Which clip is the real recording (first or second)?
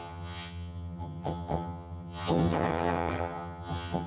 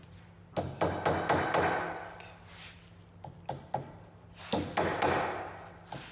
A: second